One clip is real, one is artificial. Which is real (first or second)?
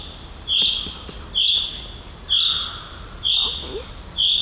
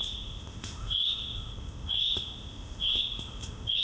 first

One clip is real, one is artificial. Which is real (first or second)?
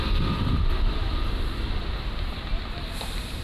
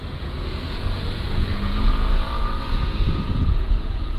first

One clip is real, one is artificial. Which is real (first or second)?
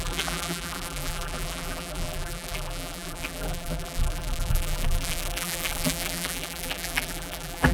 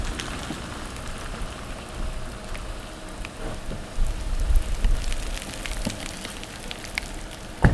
second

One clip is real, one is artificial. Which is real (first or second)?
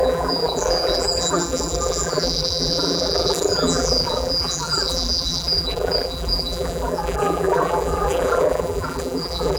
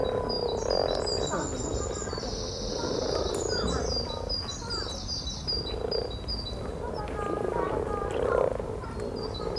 second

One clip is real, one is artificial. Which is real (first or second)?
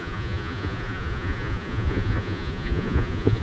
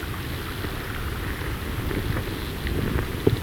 second